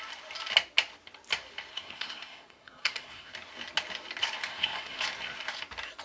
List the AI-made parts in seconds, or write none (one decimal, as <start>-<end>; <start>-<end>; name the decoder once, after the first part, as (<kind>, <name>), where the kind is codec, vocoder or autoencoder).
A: 1.7-3.3 (codec, SNAC); 4.5-5.0